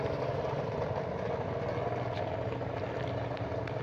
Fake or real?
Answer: real